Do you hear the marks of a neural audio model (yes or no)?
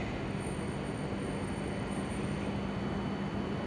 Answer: no